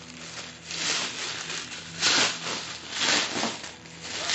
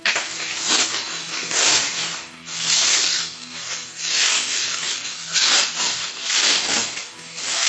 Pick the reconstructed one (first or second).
second